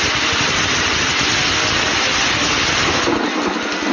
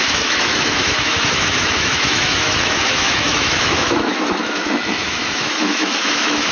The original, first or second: first